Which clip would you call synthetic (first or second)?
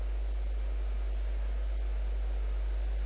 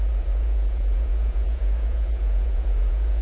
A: second